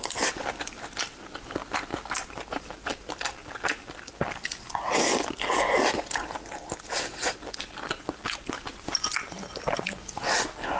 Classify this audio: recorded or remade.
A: recorded